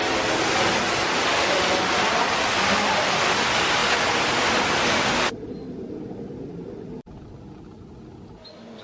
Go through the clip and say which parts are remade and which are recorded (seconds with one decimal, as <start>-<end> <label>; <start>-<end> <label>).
0.0-8.8 recorded